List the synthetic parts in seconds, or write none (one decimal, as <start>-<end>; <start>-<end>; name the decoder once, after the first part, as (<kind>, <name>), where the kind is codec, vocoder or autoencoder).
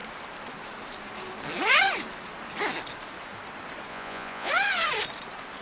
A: 3.9-4.5 (vocoder, Vocos)